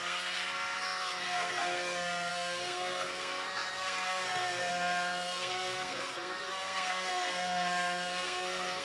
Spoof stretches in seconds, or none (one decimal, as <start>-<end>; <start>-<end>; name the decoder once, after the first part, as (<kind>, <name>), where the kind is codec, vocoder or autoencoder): 0.0-8.8 (codec, SNAC)